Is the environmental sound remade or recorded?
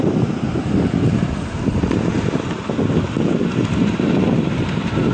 remade